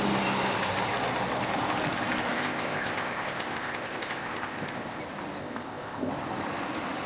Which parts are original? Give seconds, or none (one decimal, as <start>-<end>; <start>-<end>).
0.0-2.3; 5.0-5.4; 6.1-7.1